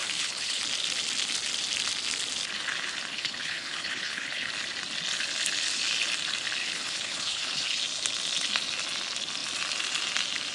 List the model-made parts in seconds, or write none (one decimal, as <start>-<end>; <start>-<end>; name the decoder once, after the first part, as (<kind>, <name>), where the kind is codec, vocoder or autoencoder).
0.0-0.6 (codec, HILCodec); 3.1-4.5; 6.6-7.8

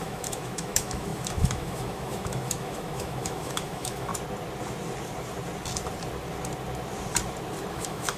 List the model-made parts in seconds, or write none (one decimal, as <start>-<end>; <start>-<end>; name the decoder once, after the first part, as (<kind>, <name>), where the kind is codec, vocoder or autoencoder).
0.0-4.1 (autoencoder, DAC-VAE); 7.7-8.2

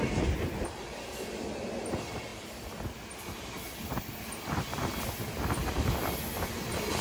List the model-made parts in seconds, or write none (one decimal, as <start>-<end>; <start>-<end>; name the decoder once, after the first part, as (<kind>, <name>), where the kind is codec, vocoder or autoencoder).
none

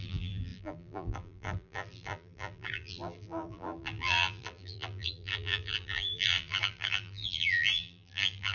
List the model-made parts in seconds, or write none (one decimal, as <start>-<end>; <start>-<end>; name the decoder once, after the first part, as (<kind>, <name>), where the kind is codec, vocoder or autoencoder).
0.0-8.5 (vocoder, BigVGAN v2)

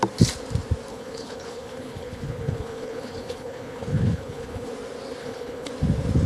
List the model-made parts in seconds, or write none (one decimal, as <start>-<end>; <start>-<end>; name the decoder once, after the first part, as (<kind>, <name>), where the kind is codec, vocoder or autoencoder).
0.9-4.7 (codec, HILCodec); 5.2-5.7

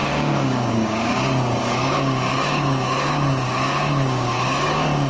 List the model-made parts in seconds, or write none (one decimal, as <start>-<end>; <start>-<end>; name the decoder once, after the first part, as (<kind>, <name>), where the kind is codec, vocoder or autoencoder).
0.0-5.1 (codec, DAC)